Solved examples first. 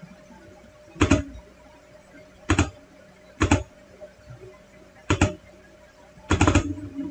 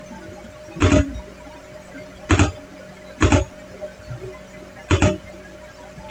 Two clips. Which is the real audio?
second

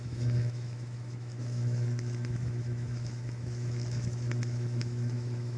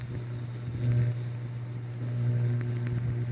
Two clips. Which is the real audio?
second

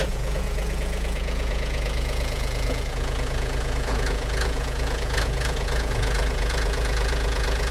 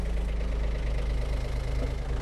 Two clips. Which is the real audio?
second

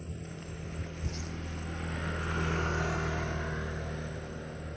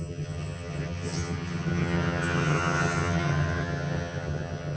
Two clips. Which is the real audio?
first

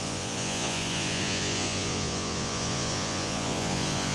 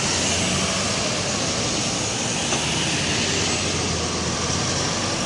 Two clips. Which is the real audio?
second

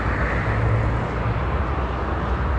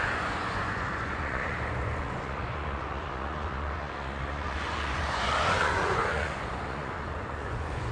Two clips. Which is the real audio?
first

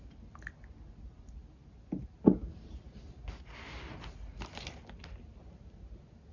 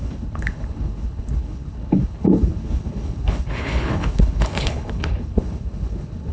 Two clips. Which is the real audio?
first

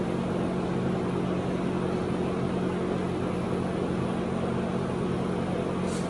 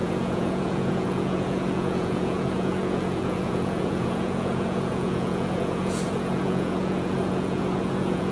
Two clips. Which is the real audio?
first